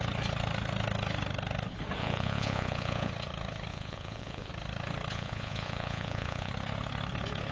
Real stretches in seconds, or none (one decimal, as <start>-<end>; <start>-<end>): 0.0-2.0; 3.1-3.7; 4.5-5.1; 6.5-7.5